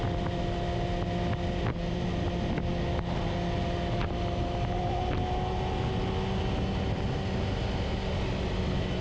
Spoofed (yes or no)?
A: no